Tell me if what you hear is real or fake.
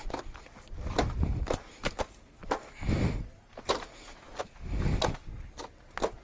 real